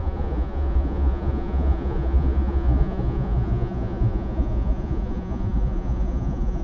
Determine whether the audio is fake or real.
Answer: fake